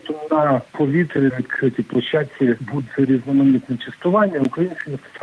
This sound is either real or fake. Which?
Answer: real